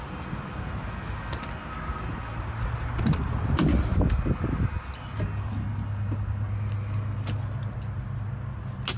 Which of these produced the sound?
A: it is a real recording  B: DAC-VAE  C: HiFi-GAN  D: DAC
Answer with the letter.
A